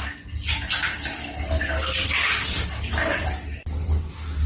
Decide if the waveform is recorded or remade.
recorded